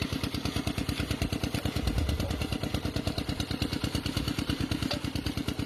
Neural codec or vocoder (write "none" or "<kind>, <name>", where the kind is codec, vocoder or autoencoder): none